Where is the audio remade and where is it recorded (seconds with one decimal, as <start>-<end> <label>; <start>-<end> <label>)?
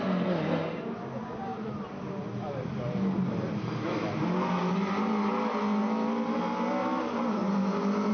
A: 0.0-8.1 recorded